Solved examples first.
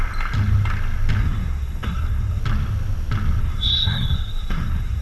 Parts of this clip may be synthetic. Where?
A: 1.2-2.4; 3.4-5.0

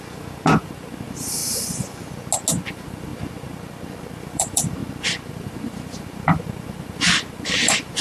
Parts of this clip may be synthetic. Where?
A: 0.0-1.4; 2.7-3.1; 4.1-4.8; 5.3-8.0

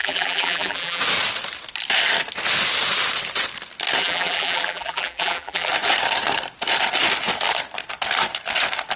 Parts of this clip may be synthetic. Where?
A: 0.0-1.0; 4.0-5.7

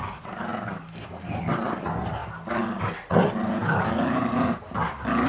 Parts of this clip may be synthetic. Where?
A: none

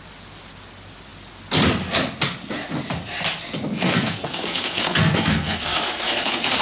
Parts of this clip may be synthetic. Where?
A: 3.7-6.6

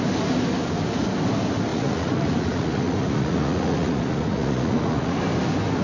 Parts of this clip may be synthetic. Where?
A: 1.7-5.2

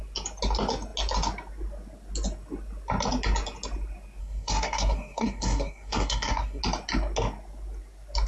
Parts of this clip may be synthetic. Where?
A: 4.2-6.6

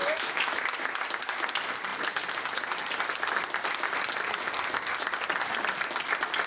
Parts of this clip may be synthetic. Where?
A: 0.0-0.6